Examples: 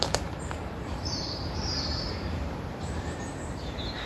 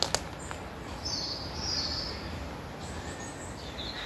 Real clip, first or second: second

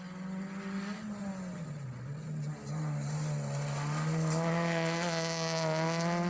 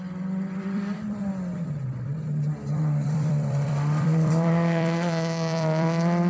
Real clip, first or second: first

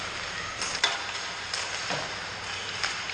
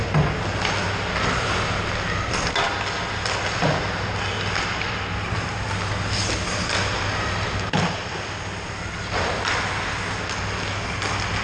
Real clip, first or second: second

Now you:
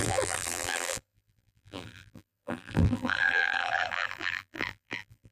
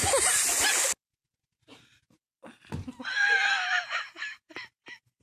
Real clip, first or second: second